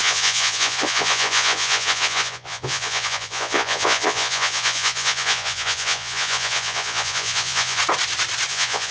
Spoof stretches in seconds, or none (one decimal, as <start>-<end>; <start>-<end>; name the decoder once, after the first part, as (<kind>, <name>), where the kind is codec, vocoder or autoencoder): 0.0-7.8 (vocoder, Vocos); 8.5-8.9